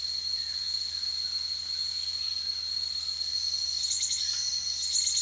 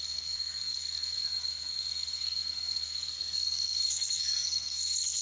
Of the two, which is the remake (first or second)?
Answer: second